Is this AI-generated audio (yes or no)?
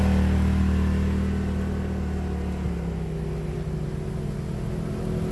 no